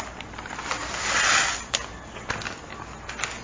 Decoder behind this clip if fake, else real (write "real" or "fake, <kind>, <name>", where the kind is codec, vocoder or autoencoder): real